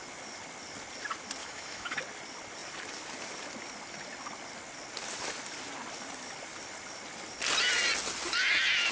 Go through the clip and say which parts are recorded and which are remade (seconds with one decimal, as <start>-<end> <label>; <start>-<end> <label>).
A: 0.0-1.4 recorded; 1.4-2.0 remade; 2.0-8.9 recorded